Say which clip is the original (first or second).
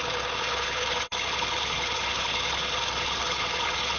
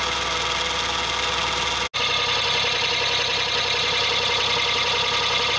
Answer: second